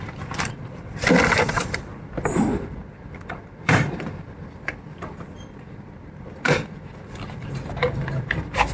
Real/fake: fake